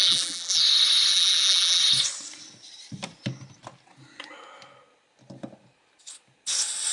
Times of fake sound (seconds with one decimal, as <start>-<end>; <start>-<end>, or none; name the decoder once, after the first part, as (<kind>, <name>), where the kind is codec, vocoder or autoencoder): 0.0-0.6 (vocoder, BigVGAN v2); 1.1-1.8